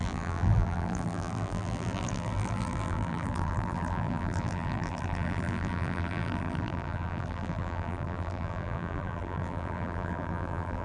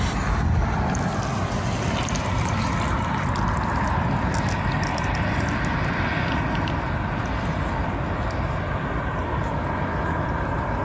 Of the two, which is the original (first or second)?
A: second